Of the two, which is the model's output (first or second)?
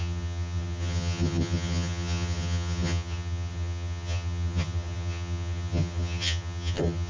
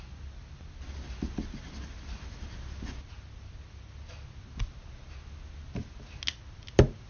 first